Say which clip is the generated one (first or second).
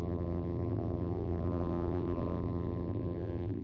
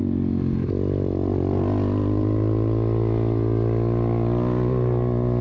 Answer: first